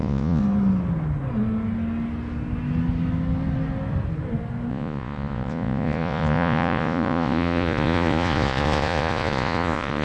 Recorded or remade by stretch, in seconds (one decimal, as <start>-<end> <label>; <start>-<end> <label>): 0.0-0.4 remade; 0.4-4.7 recorded; 4.7-10.0 remade